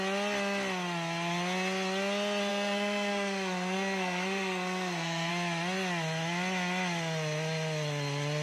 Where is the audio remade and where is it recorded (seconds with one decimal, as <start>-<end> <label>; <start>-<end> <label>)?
0.0-2.5 recorded; 2.5-5.3 remade; 5.3-8.4 recorded